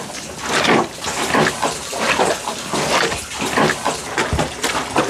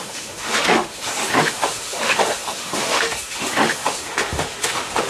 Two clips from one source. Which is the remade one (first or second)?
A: second